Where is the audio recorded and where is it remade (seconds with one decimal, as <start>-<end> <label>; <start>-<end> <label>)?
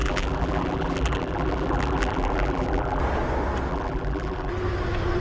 0.0-3.0 remade; 3.0-3.7 recorded; 3.7-4.5 remade; 4.5-5.2 recorded